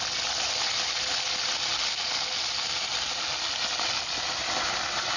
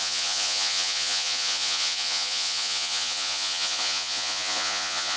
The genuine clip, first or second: first